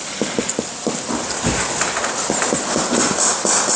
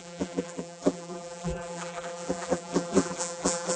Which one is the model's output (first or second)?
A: second